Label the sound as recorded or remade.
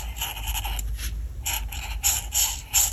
recorded